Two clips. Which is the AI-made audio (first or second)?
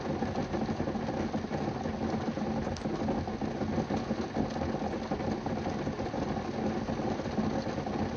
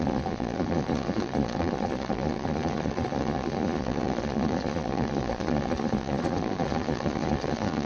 second